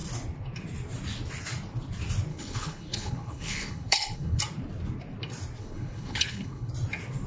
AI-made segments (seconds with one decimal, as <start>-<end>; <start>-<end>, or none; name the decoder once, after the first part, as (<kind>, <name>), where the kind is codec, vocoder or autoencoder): 2.3-4.4 (codec, HILCodec); 5.6-6.7